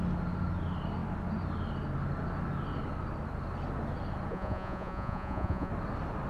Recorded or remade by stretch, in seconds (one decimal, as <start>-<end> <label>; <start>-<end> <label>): 0.0-4.3 recorded; 4.3-5.7 remade; 5.7-6.3 recorded